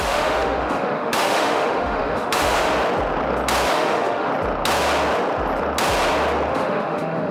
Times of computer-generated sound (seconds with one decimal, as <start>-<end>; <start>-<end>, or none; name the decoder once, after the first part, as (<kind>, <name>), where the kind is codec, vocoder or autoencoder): 0.0-2.7 (autoencoder, DAC-VAE); 3.7-4.3; 6.5-7.3